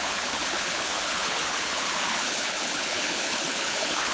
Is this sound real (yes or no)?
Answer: no